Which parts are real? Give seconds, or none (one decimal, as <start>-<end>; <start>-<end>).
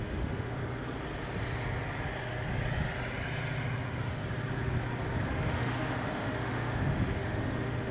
0.6-5.3